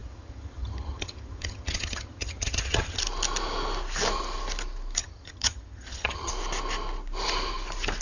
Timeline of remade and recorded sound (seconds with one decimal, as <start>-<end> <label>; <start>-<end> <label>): 0.0-3.0 remade; 3.0-5.0 recorded; 5.0-6.3 remade; 6.3-8.0 recorded